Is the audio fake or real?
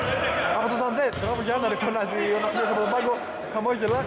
real